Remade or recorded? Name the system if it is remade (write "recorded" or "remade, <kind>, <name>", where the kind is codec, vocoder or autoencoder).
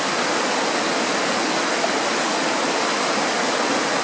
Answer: recorded